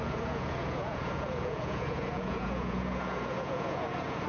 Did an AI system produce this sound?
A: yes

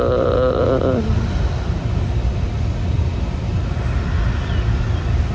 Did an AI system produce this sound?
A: no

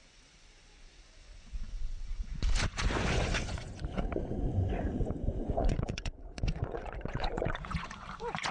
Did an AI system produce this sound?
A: yes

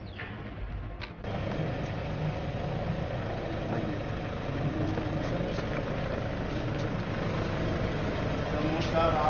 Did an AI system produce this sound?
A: no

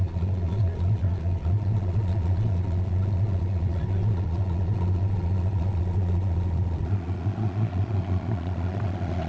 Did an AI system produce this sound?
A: yes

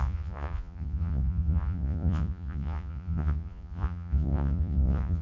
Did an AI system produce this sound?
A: yes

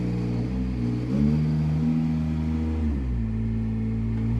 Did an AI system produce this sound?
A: no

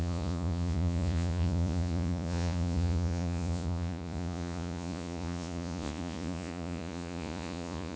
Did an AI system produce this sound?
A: yes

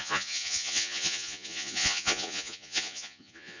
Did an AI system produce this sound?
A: yes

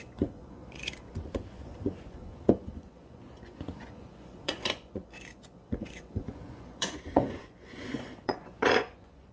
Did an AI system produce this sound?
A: yes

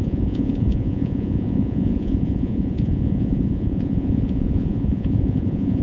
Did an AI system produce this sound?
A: yes